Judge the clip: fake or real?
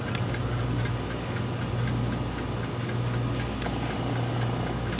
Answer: real